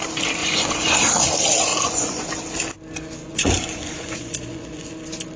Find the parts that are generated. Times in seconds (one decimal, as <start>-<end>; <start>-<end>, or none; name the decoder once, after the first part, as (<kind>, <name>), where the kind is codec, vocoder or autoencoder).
0.4-1.1 (vocoder, Vocos); 1.7-2.3; 3.2-4.9

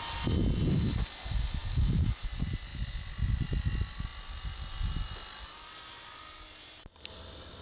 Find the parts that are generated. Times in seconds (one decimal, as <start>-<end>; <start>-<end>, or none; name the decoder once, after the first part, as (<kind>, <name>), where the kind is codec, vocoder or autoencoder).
none

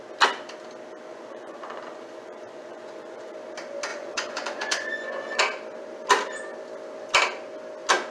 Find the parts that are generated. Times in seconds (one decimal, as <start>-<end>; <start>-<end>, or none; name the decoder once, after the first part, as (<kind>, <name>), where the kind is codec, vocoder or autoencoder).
1.1-3.3 (vocoder, Vocos); 3.9-5.4

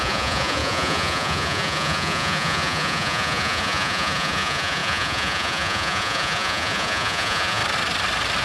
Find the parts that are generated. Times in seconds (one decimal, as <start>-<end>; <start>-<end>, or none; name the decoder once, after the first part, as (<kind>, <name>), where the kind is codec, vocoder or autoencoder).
0.0-7.6 (vocoder, Vocos)

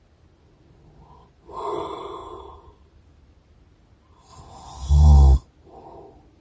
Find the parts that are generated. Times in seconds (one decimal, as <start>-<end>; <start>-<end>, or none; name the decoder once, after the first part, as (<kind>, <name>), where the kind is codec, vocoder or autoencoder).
2.2-2.7 (vocoder, Vocos)

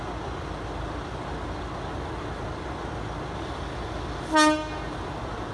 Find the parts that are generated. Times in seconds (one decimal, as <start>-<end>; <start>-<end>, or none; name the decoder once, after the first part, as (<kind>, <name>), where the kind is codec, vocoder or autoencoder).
none

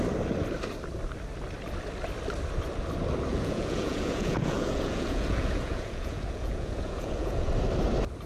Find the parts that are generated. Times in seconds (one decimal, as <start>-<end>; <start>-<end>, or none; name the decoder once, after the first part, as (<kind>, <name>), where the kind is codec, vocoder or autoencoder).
3.3-7.5 (vocoder, Vocos)

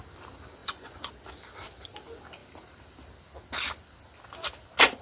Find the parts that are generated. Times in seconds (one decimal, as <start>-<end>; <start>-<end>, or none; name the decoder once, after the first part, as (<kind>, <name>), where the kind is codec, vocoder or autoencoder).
0.6-1.1 (vocoder, Vocos)